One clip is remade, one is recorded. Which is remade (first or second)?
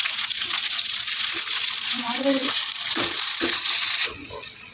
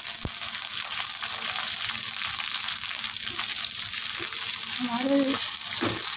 first